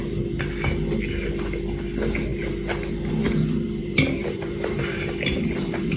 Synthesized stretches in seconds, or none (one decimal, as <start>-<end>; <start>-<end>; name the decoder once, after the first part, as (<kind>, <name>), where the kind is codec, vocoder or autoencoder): 3.8-6.0 (vocoder, BigVGAN v2)